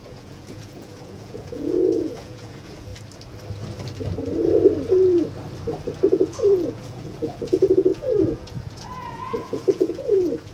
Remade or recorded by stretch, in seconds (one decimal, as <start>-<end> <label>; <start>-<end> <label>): 0.0-2.9 remade; 2.9-6.1 recorded; 6.1-10.5 remade